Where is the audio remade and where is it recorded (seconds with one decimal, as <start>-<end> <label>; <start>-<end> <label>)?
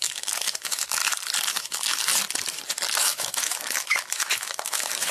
0.0-1.0 remade; 1.0-1.5 recorded; 1.5-2.1 remade; 2.1-3.0 recorded; 3.0-5.1 remade